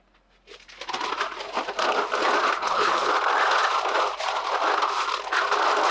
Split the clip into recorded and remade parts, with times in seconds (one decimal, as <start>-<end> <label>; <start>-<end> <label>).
0.0-2.6 recorded; 2.6-3.1 remade; 3.1-5.9 recorded